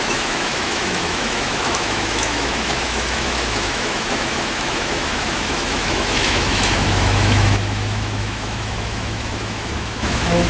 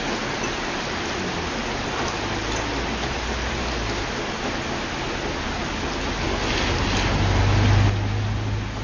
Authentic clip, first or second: second